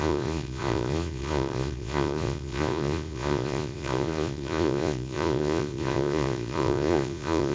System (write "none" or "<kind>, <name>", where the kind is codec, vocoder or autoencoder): vocoder, Vocos